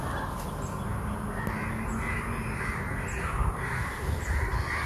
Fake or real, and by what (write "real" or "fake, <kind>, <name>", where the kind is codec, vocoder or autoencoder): real